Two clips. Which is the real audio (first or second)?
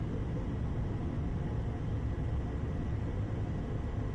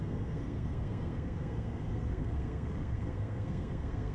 first